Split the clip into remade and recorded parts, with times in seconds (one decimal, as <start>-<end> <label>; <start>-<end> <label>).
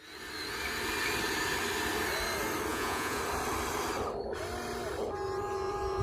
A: 0.0-2.7 recorded; 2.7-3.2 remade; 3.2-6.0 recorded